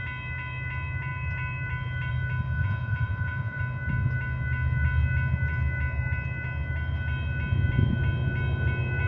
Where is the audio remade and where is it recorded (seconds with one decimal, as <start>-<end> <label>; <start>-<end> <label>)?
0.0-2.6 recorded; 2.6-3.6 remade; 3.6-9.1 recorded